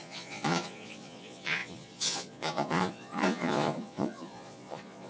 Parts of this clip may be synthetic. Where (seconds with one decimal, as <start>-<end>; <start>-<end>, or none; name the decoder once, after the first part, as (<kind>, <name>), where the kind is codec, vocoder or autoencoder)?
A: 0.0-5.1 (vocoder, Vocos)